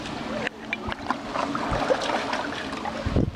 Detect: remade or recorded recorded